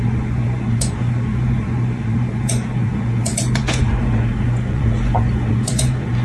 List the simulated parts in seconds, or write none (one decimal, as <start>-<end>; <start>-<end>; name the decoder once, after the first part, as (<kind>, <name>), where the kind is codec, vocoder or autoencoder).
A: 0.0-6.2 (vocoder, Vocos)

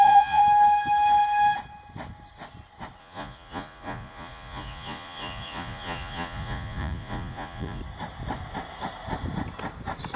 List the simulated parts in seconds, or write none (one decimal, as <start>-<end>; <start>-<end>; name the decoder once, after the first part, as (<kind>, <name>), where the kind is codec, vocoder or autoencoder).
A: 0.0-0.4 (vocoder, Vocos); 3.0-7.8

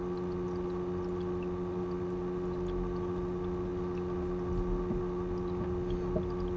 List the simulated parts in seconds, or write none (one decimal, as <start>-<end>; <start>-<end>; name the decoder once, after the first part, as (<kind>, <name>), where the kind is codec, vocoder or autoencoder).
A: none

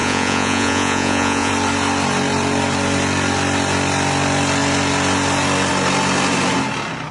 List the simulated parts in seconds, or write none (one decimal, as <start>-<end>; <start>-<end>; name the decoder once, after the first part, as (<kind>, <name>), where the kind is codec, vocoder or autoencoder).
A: 0.0-1.5 (vocoder, Vocos)

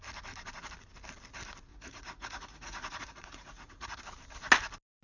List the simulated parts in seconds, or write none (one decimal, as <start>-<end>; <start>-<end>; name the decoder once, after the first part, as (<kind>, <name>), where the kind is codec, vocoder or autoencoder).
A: 1.7-4.0 (vocoder, Vocos)

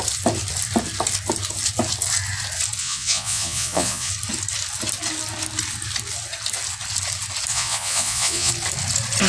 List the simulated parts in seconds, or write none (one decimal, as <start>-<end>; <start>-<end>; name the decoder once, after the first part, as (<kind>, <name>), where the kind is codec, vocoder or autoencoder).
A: 2.8-4.1 (vocoder, Vocos); 7.5-8.5

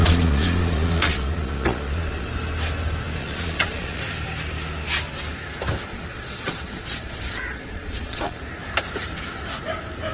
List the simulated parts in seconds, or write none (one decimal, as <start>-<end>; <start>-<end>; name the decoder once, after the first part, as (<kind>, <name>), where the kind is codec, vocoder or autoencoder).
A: 0.0-2.3 (vocoder, Vocos); 3.2-4.0; 5.9-8.4